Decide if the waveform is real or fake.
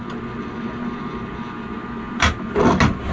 real